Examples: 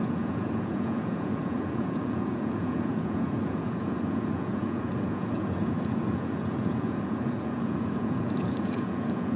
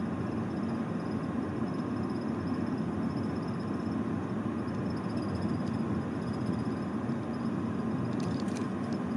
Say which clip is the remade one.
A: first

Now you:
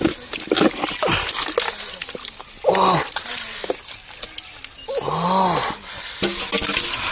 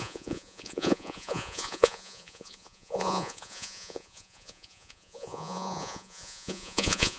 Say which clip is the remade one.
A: second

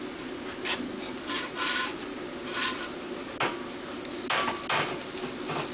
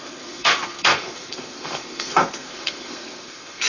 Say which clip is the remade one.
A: second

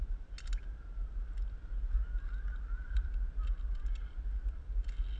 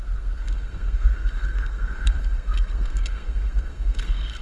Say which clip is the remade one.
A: second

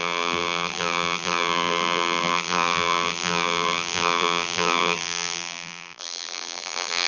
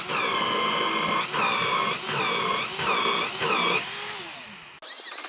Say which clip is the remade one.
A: first